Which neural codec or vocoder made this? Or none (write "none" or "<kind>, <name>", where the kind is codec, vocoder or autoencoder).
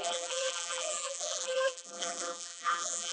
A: vocoder, BigVGAN v2